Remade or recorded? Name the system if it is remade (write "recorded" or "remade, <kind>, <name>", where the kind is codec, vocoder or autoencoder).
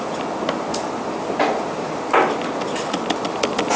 recorded